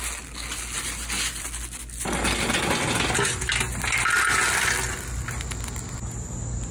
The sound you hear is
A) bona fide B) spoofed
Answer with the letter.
A